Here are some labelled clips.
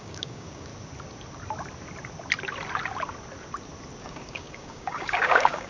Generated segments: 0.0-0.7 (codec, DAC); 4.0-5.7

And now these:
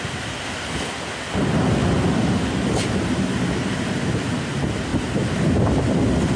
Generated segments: none

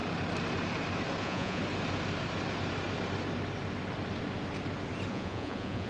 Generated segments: 1.2-1.6 (vocoder, Vocos); 5.1-5.9